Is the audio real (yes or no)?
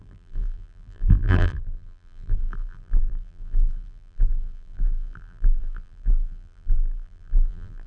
no